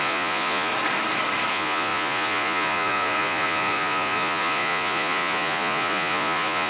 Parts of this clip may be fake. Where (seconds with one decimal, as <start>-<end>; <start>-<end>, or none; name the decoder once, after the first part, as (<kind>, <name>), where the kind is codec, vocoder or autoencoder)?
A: 0.0-0.7 (vocoder, Vocos); 1.5-6.7